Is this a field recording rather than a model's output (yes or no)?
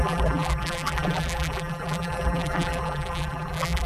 no